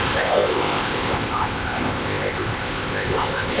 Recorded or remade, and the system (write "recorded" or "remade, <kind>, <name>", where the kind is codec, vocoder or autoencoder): remade, codec, ZipCodec